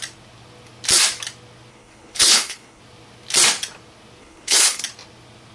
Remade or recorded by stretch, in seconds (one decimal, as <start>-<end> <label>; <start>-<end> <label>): 0.0-1.7 recorded; 1.7-2.8 remade; 2.8-4.2 recorded; 4.2-4.8 remade; 4.8-5.5 recorded